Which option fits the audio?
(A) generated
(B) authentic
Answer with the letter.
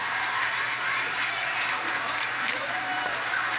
A